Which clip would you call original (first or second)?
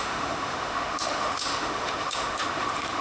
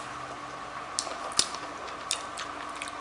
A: second